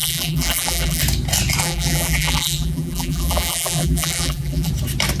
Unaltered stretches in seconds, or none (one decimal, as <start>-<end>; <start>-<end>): 1.0-1.6; 4.7-5.2